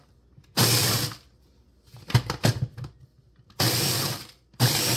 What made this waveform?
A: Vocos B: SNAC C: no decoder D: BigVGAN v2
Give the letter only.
C